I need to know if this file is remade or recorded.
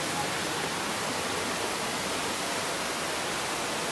recorded